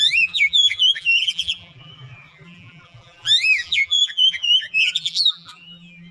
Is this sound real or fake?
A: fake